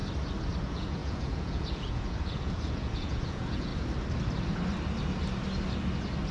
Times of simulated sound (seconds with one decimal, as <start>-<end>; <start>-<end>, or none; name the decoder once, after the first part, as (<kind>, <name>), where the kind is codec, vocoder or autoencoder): 0.6-3.7 (vocoder, Vocos)